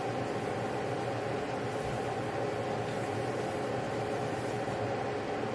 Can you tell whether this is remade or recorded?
recorded